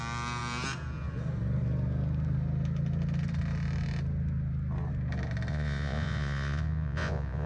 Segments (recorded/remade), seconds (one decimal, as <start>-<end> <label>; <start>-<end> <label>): 0.0-5.5 recorded; 5.5-7.5 remade